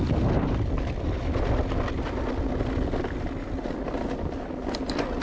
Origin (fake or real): real